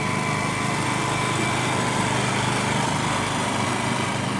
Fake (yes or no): no